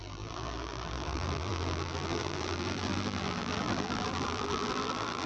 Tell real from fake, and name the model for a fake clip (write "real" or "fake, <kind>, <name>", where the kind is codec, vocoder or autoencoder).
fake, vocoder, BigVGAN v2